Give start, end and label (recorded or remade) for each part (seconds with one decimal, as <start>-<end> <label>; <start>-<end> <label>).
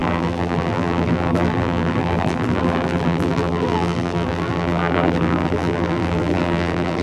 0.0-7.0 remade